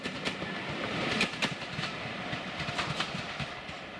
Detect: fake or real fake